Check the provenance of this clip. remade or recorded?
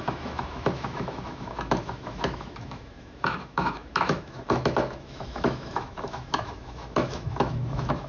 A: remade